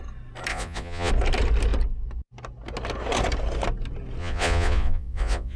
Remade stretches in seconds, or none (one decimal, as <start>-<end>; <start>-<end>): 0.5-1.1; 4.2-5.6